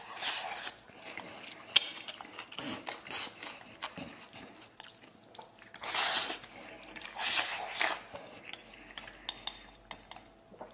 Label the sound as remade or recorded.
recorded